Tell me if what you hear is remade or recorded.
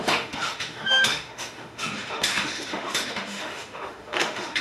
remade